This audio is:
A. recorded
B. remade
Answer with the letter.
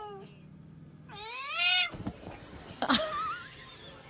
B